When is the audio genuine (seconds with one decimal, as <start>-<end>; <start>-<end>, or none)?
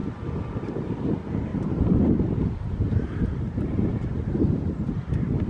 0.0-1.5; 3.4-5.5